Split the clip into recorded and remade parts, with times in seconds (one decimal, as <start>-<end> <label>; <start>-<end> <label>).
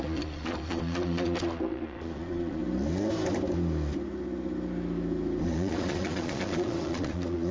0.0-2.6 remade; 2.6-5.4 recorded; 5.4-7.5 remade